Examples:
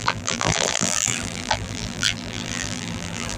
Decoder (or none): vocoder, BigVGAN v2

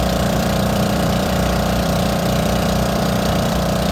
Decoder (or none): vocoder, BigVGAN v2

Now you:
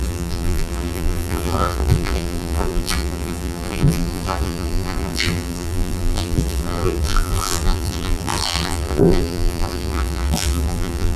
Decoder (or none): vocoder, BigVGAN v2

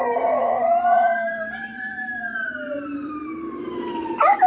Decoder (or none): vocoder, BigVGAN v2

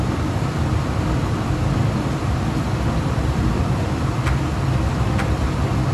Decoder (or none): vocoder, BigVGAN v2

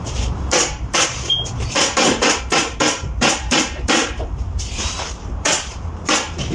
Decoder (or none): vocoder, BigVGAN v2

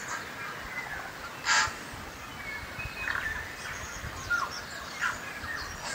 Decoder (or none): none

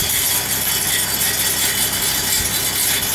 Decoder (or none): none